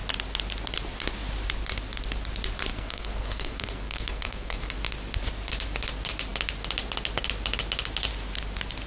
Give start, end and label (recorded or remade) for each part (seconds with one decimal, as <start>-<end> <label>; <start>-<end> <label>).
0.0-2.7 recorded; 2.7-4.6 remade; 4.6-8.9 recorded